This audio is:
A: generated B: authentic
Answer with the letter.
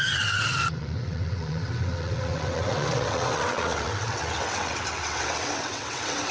A